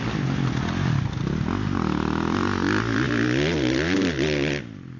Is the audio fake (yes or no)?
no